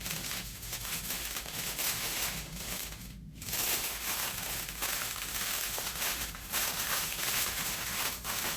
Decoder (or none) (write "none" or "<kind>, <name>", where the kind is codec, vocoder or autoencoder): autoencoder, DAC-VAE